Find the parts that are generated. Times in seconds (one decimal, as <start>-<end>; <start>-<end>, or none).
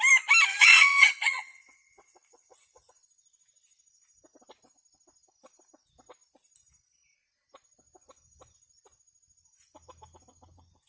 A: 0.5-2.9